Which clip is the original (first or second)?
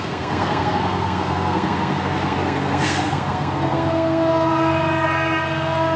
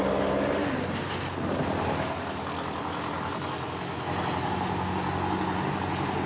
second